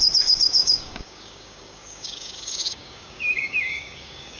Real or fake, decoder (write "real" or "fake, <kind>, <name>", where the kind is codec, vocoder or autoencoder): fake, codec, DAC